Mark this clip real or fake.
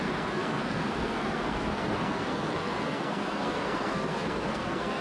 fake